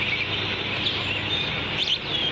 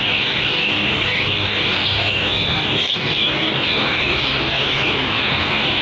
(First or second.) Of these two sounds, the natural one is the first